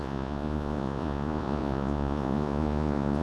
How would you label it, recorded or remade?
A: remade